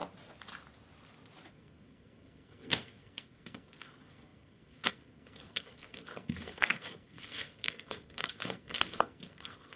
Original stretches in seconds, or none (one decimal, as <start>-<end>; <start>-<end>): 0.0-1.5